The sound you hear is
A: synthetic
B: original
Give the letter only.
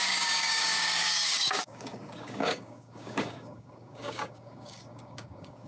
A